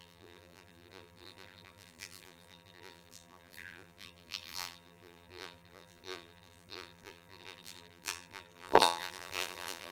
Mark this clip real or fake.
fake